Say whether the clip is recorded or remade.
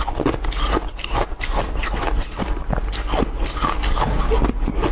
recorded